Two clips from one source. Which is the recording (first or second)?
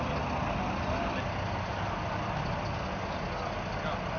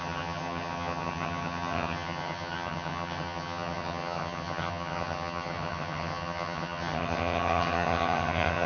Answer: first